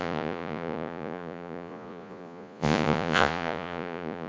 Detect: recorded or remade remade